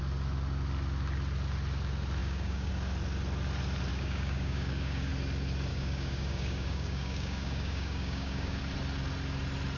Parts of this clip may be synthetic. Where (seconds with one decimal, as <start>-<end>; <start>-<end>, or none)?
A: 2.2-2.7; 3.9-5.1; 5.7-8.6